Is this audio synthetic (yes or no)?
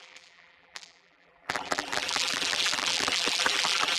yes